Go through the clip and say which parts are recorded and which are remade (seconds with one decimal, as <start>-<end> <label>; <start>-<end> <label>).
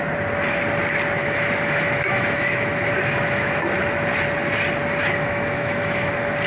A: 0.0-1.2 recorded; 1.2-3.6 remade; 3.6-5.0 recorded; 5.0-6.1 remade; 6.1-6.5 recorded